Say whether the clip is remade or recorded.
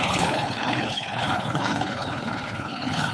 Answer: remade